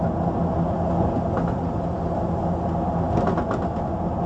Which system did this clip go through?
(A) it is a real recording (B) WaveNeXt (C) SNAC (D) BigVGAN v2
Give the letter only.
A